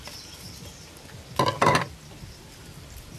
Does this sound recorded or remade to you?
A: recorded